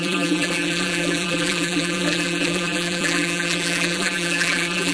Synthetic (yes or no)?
yes